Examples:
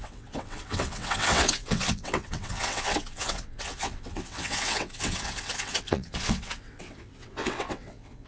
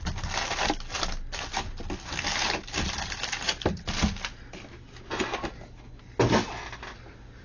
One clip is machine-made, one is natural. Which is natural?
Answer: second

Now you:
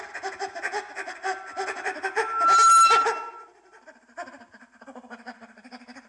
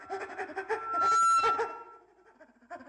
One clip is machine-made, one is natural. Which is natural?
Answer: second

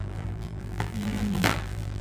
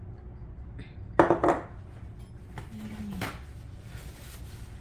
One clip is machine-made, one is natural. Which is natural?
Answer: second